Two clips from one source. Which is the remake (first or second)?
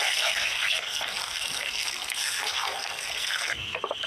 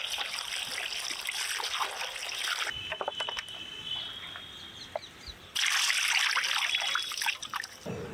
first